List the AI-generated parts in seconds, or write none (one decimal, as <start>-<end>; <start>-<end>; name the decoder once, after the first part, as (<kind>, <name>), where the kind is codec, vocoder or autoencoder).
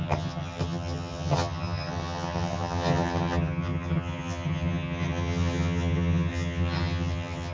0.0-7.5 (vocoder, HiFi-GAN)